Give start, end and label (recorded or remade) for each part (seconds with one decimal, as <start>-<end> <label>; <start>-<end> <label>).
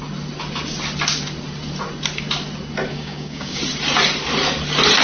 0.0-2.9 recorded; 2.9-3.6 remade; 3.6-5.0 recorded